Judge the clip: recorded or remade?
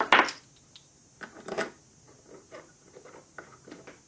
recorded